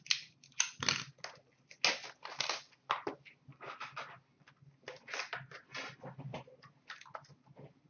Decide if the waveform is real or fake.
real